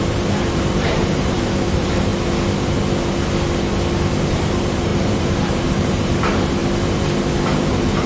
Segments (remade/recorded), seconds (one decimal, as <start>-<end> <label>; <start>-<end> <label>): 0.0-2.1 remade; 2.1-4.3 recorded; 4.3-6.6 remade; 6.6-8.1 recorded

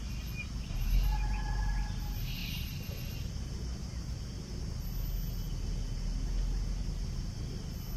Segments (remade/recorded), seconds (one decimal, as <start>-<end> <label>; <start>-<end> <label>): 0.0-8.0 recorded

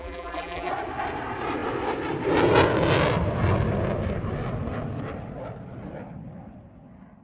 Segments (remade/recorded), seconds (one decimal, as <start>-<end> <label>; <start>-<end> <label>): 0.0-0.7 remade; 0.7-7.2 recorded

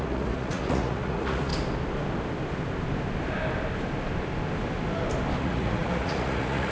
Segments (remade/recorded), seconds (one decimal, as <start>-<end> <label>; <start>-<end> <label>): 0.0-1.5 remade; 1.5-5.4 recorded; 5.4-6.7 remade

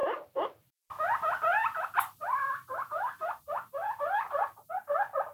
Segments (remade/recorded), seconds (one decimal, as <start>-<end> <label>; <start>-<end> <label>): 0.0-1.5 recorded; 1.5-4.7 remade; 4.7-5.3 recorded

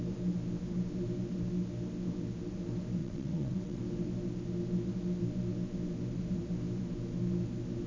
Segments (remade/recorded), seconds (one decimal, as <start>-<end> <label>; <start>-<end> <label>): 0.0-3.0 recorded; 3.0-3.8 remade; 3.8-7.9 recorded